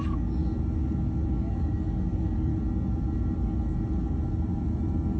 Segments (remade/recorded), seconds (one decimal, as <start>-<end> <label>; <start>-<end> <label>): 0.0-0.4 remade; 0.4-1.3 recorded; 1.3-2.5 remade; 2.5-5.2 recorded